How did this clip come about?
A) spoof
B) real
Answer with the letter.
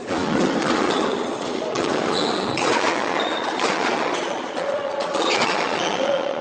A